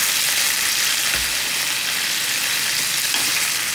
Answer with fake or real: real